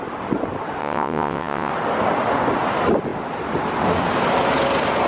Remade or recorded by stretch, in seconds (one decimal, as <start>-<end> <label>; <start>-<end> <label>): 0.0-0.8 recorded; 0.8-1.7 remade; 1.7-5.1 recorded